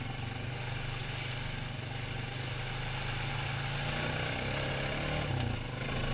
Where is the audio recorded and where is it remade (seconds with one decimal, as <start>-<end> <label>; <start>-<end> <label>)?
0.0-6.1 recorded

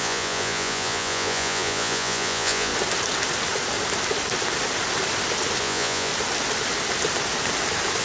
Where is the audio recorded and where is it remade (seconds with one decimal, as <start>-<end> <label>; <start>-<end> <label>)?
0.0-2.7 remade; 2.7-5.6 recorded; 5.6-6.1 remade; 6.1-8.0 recorded

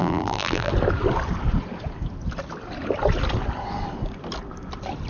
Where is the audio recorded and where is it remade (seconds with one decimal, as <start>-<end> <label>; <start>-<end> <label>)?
0.0-0.7 remade; 0.7-5.1 recorded

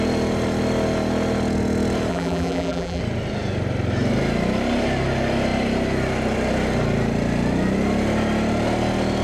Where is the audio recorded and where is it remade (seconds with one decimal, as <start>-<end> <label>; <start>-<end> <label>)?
0.0-2.1 recorded; 2.1-3.0 remade; 3.0-9.2 recorded

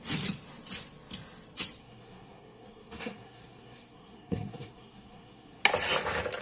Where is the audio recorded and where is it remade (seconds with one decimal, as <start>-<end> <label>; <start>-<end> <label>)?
0.0-1.8 recorded; 1.8-5.6 remade; 5.6-6.4 recorded

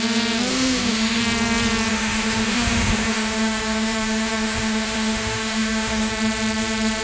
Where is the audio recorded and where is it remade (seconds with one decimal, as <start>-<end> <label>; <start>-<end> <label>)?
0.0-0.5 recorded; 0.5-1.2 remade; 1.2-1.9 recorded; 1.9-6.1 remade; 6.1-7.0 recorded

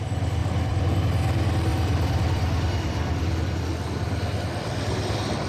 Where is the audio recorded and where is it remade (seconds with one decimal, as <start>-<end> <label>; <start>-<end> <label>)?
0.0-0.4 recorded; 0.4-1.0 remade; 1.0-1.7 recorded; 1.7-3.4 remade; 3.4-5.5 recorded